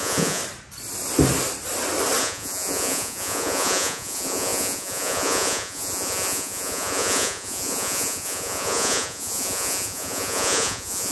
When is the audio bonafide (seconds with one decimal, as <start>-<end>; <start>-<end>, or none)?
0.4-2.2